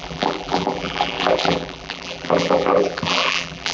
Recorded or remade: remade